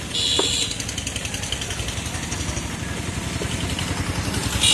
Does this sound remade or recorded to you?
recorded